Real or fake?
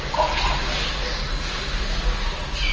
real